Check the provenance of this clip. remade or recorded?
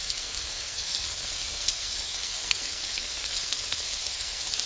remade